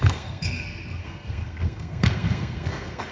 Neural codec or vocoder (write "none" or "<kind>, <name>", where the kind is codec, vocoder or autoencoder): codec, SNAC